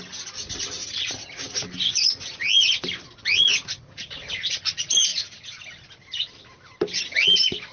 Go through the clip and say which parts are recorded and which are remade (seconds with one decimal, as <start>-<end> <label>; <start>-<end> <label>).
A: 0.0-7.7 recorded